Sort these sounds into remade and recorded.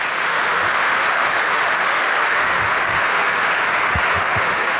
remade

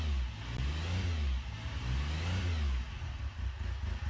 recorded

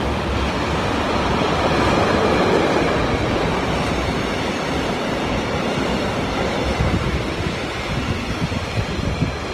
recorded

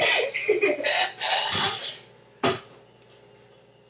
recorded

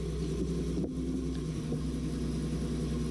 recorded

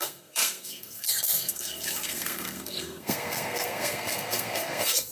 remade